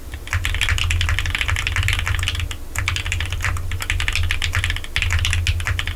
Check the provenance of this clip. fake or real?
real